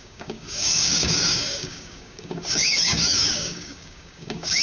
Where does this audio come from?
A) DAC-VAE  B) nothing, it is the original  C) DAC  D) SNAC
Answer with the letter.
C